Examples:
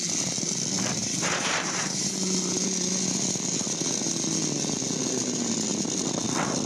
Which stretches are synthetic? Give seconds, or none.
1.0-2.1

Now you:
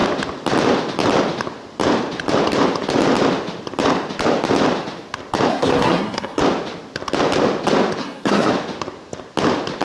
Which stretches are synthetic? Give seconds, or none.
5.5-6.4; 8.0-8.5

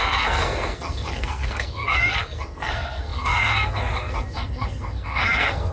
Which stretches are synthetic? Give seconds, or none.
0.0-5.7

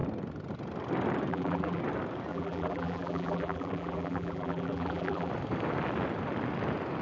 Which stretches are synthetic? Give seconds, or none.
1.3-1.8; 2.3-5.3

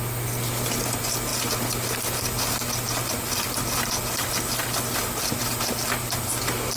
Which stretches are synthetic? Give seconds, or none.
none

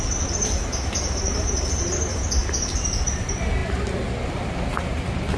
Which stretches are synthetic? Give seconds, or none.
none

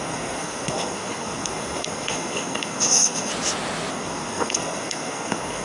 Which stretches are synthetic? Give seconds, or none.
0.0-3.3; 3.9-5.6

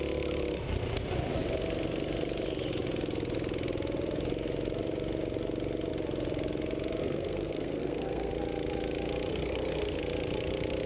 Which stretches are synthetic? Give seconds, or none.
7.0-8.3; 9.3-10.0